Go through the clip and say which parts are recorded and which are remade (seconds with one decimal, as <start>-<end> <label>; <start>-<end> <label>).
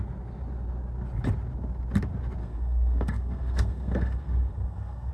0.0-2.4 recorded; 2.4-5.1 remade